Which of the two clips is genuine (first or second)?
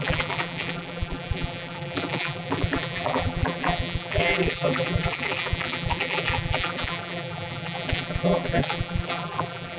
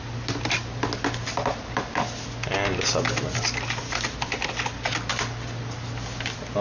second